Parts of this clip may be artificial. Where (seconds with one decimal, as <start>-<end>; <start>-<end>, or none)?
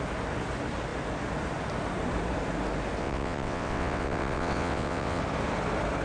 3.0-5.2